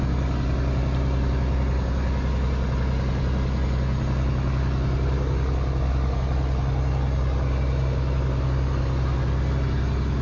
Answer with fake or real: real